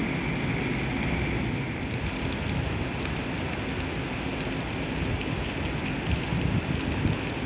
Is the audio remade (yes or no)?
no